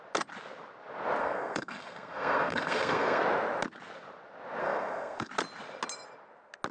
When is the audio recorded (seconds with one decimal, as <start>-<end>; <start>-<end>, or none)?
0.0-1.2; 3.2-4.6; 5.3-6.7